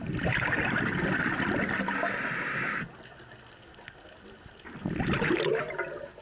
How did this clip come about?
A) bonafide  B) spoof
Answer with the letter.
A